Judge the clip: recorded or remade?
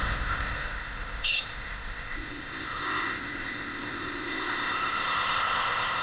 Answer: remade